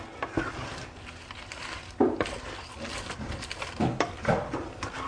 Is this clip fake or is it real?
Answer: real